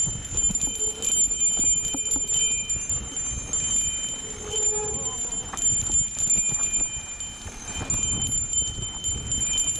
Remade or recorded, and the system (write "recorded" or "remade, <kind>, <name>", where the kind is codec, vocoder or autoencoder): recorded